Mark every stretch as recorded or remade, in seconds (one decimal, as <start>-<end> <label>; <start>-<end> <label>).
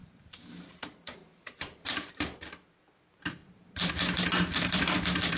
0.0-1.9 remade; 1.9-3.4 recorded; 3.4-3.9 remade; 3.9-5.4 recorded